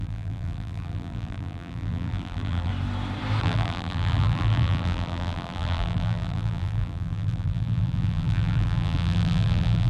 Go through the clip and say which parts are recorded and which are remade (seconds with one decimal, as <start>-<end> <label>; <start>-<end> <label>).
0.0-2.7 remade; 2.7-3.4 recorded; 3.4-9.9 remade